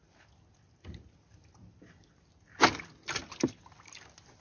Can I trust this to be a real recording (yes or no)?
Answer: yes